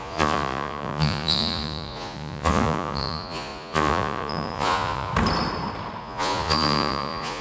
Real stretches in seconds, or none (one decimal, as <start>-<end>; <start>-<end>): 5.1-6.0